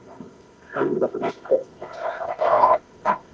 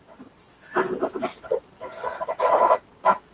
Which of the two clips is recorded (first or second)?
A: second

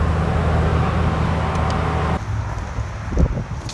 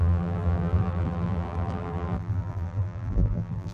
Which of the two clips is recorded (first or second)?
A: first